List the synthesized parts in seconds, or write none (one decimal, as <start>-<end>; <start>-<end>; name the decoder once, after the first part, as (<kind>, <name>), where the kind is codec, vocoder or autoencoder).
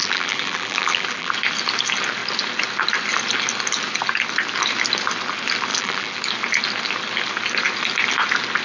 0.0-1.3 (vocoder, BigVGAN v2); 5.7-6.2